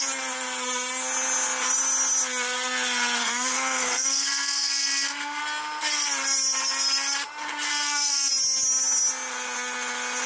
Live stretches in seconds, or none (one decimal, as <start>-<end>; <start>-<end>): 0.0-3.2; 5.4-7.7; 8.3-10.3